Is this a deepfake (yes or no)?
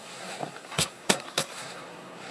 yes